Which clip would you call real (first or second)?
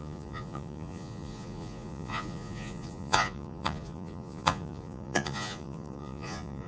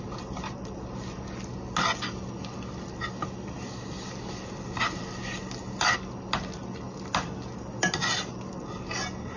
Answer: second